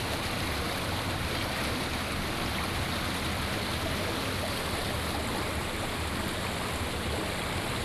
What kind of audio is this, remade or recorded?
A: recorded